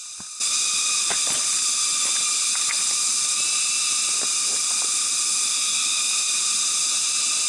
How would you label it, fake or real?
real